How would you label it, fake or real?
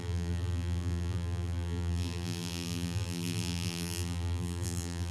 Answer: fake